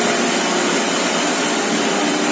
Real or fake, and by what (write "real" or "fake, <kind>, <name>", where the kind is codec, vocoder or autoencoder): real